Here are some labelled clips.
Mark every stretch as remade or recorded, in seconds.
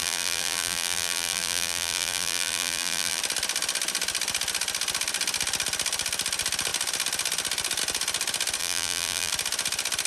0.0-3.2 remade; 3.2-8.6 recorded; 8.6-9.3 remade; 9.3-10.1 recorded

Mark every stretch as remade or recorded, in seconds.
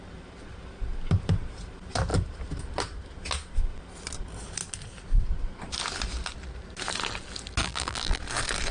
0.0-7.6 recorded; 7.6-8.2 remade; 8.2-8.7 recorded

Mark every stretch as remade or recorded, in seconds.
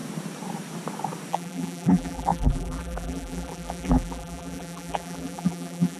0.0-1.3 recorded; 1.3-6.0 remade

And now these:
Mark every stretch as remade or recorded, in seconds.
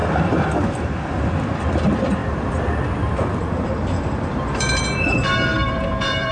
0.0-2.2 recorded; 2.2-4.8 remade; 4.8-5.5 recorded; 5.5-6.3 remade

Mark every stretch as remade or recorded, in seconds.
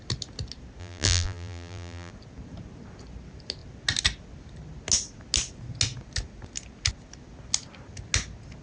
0.0-0.8 recorded; 0.8-2.1 remade; 2.1-8.6 recorded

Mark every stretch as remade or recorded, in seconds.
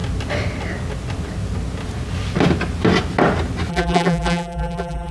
0.0-3.7 recorded; 3.7-5.1 remade